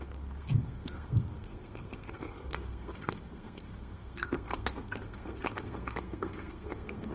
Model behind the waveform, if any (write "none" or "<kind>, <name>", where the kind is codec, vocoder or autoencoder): codec, SNAC